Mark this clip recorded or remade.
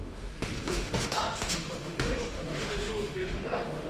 remade